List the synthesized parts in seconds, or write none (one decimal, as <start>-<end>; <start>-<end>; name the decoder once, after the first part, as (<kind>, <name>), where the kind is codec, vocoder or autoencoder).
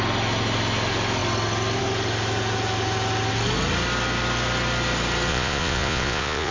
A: 5.3-6.5 (vocoder, Vocos)